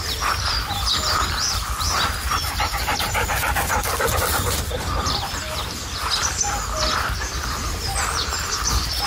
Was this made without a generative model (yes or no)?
no